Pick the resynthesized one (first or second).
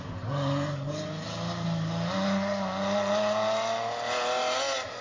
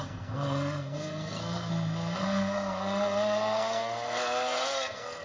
second